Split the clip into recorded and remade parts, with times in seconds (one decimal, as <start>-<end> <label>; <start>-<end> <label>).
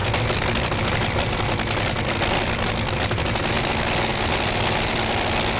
0.0-5.6 recorded